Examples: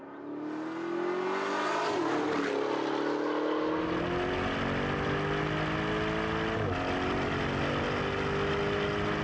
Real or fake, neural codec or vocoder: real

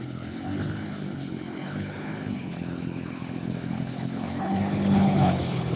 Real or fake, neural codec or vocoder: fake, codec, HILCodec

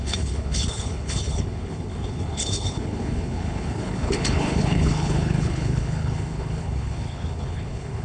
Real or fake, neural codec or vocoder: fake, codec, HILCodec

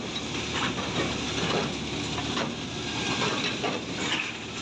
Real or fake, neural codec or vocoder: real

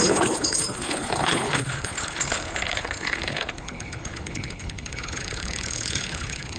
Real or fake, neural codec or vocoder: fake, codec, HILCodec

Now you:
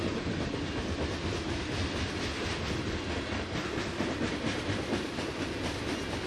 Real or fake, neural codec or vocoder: real